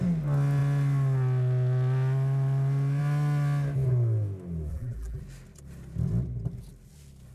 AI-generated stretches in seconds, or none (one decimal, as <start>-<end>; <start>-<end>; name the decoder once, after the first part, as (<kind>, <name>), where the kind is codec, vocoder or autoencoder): 4.7-5.2 (vocoder, BigVGAN v2)